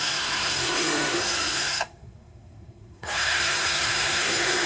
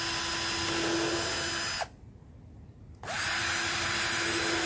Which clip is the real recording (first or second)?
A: second